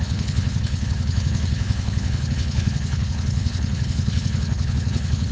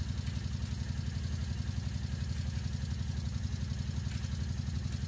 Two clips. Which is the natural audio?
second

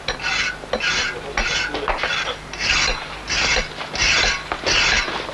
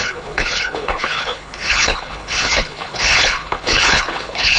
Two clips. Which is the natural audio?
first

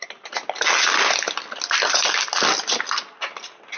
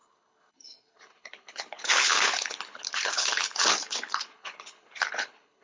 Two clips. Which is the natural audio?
first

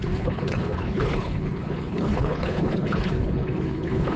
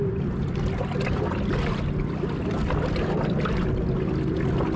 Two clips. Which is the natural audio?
second